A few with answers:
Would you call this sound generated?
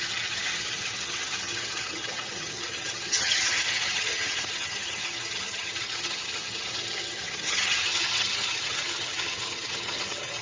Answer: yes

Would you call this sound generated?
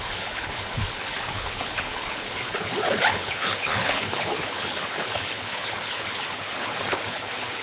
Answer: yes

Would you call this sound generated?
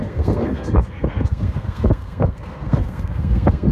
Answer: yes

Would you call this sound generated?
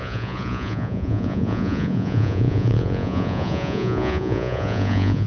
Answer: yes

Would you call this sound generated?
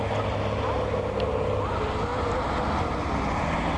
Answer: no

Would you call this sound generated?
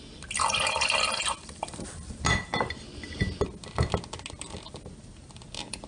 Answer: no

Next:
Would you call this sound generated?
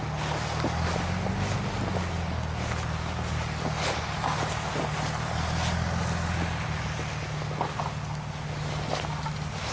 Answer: no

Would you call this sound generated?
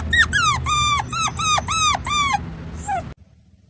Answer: no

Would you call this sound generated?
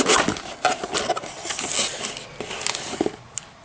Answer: no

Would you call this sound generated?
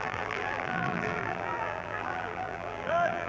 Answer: yes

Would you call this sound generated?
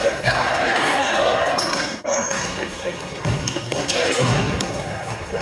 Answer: yes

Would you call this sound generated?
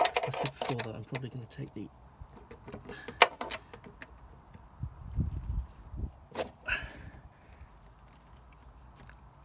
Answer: no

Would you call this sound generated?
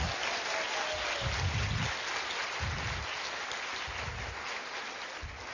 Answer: no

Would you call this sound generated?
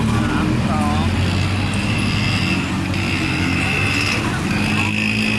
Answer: no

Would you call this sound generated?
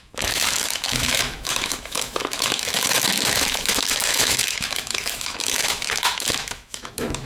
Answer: yes